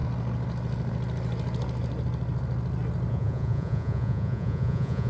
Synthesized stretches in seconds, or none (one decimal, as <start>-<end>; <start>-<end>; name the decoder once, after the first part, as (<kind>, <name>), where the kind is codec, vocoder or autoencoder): 3.1-5.1 (vocoder, Vocos)